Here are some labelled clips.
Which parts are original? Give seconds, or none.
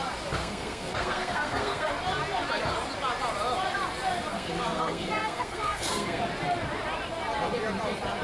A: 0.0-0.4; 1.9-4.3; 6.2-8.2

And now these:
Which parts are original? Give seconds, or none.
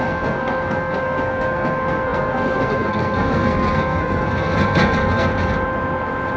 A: 5.3-6.4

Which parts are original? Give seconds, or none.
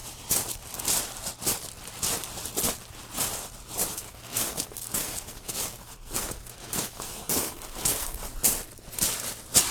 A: 0.0-3.9; 8.2-9.7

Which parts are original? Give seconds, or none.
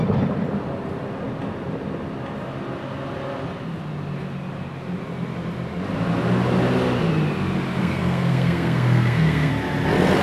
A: 0.0-7.8; 9.5-10.2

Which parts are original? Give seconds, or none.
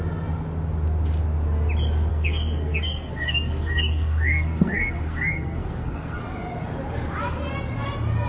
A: 0.0-2.1; 6.2-8.3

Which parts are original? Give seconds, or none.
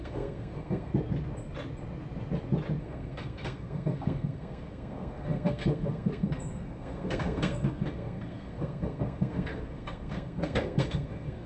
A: 0.9-2.8